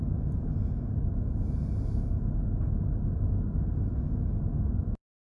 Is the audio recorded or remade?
recorded